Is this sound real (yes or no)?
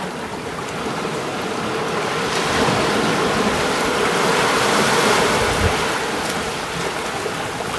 yes